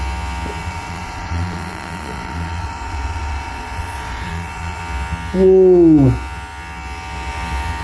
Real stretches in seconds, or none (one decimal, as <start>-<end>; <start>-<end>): 0.0-0.6; 4.8-7.8